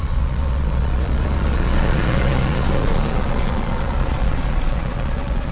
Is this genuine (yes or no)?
no